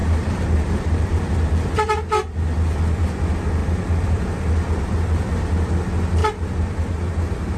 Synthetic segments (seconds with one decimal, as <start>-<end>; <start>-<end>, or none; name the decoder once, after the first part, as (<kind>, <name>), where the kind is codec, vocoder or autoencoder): 0.0-1.2 (vocoder, BigVGAN v2); 3.6-4.2